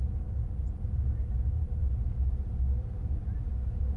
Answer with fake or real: real